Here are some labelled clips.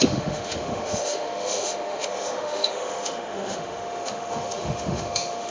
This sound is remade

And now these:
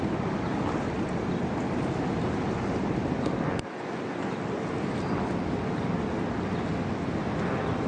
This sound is recorded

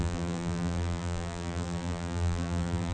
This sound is remade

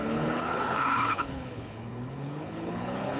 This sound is remade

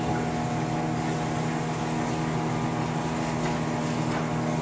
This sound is recorded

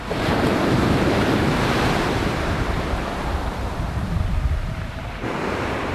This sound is remade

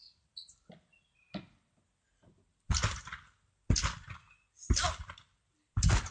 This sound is recorded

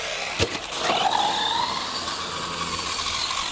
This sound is recorded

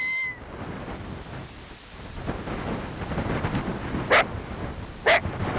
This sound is recorded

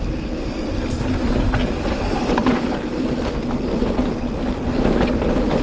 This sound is recorded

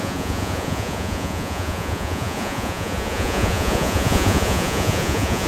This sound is remade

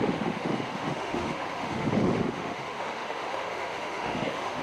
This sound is remade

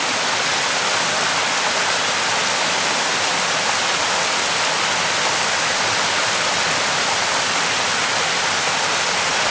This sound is recorded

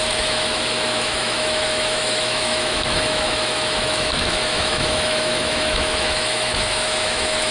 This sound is remade